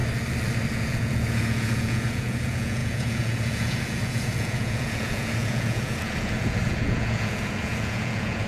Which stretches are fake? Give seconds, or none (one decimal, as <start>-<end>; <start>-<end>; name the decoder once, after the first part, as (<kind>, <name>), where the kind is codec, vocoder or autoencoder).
0.7-8.5 (vocoder, Vocos)